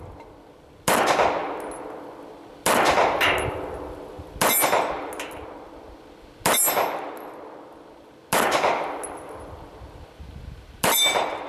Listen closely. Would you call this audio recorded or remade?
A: recorded